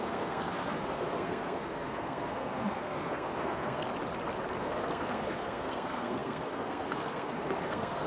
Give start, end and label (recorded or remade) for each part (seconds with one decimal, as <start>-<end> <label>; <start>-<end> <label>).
0.0-3.8 remade; 3.8-4.6 recorded; 4.6-8.1 remade